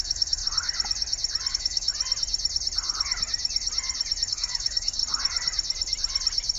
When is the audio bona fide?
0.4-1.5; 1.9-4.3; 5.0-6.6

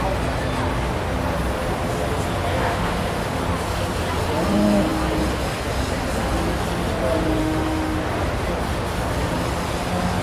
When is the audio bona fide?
0.0-2.6; 3.4-7.4; 8.0-10.2

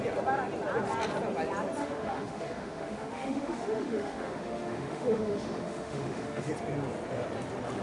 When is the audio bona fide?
0.0-1.8; 6.5-7.8

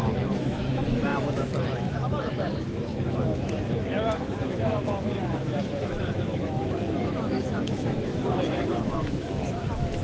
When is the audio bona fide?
none

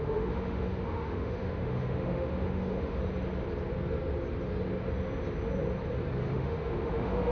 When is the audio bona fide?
3.0-6.3